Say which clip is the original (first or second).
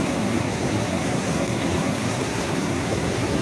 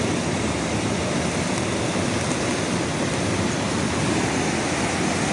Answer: second